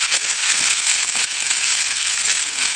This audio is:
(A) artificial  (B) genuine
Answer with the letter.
A